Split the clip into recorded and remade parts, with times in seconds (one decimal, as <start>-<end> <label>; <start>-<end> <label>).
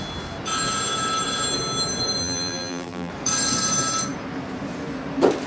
0.0-2.2 recorded; 2.2-3.1 remade; 3.1-5.5 recorded